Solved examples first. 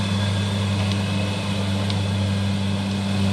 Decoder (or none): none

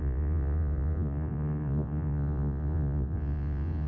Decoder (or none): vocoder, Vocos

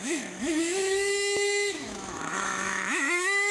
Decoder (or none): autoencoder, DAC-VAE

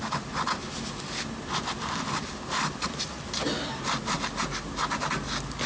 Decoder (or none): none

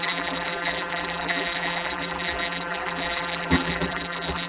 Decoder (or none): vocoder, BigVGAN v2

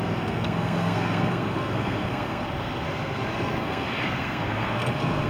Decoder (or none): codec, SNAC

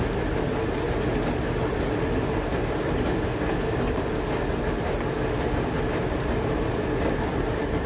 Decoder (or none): none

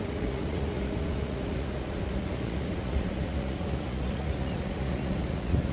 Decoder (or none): vocoder, Vocos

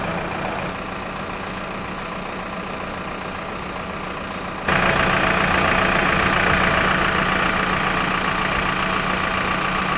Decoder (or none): none